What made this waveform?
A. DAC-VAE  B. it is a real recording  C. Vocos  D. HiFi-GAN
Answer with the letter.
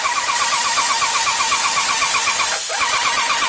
B